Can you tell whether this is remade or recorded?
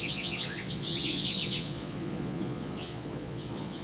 remade